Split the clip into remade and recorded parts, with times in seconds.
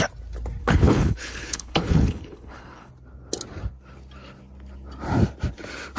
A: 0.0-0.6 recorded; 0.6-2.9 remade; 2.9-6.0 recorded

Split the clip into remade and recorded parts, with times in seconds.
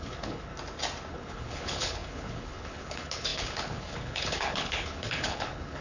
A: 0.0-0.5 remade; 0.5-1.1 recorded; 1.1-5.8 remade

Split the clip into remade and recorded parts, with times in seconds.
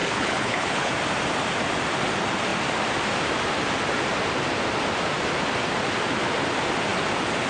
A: 0.0-0.9 remade; 0.9-7.5 recorded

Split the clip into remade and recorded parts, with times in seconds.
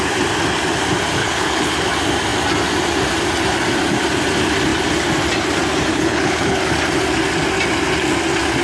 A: 0.0-1.2 recorded; 1.2-1.9 remade; 1.9-5.9 recorded; 5.9-6.6 remade; 6.6-8.6 recorded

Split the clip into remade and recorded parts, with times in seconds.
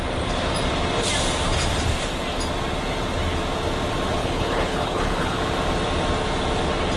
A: 0.0-4.2 recorded; 4.2-5.4 remade; 5.4-7.0 recorded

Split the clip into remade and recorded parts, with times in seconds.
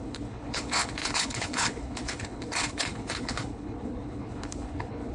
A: 0.0-5.1 remade